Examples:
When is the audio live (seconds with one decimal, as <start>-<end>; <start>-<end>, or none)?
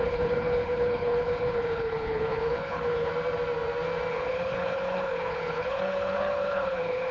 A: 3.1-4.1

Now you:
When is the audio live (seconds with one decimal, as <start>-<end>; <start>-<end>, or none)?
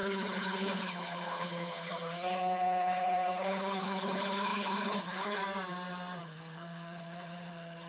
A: 5.4-6.2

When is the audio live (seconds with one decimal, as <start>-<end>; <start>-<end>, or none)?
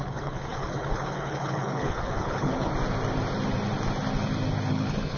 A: 2.7-4.7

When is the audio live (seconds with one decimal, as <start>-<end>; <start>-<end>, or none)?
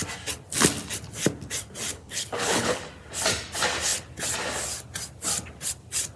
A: 0.0-1.9; 2.8-6.2